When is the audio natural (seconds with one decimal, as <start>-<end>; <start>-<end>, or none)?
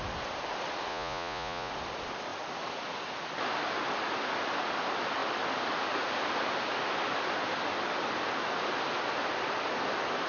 0.0-0.9; 1.7-10.3